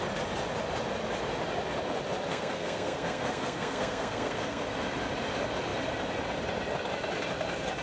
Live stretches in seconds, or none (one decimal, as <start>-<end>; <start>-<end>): 0.0-2.3; 4.6-7.8